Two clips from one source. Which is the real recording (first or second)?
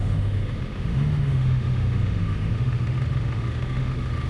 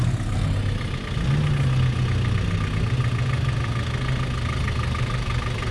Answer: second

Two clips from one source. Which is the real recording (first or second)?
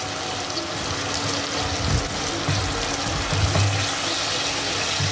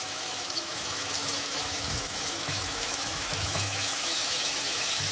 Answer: first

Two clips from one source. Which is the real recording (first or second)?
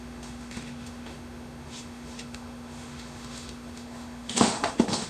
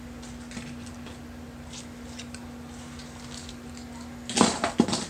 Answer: second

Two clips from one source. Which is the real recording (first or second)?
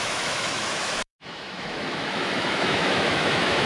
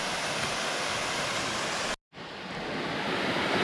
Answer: second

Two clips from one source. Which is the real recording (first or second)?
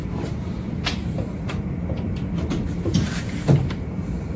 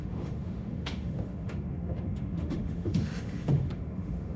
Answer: first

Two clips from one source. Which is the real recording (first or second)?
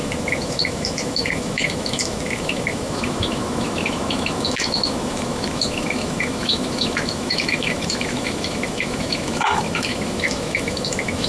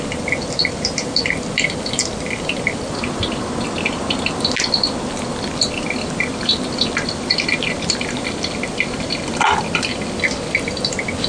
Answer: second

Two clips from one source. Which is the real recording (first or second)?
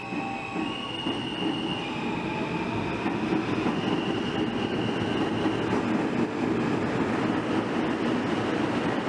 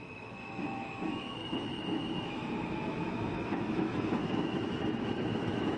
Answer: first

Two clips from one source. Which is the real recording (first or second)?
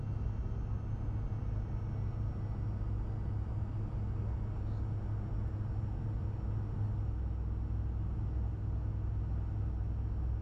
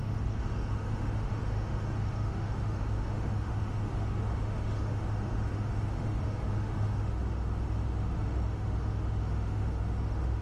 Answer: first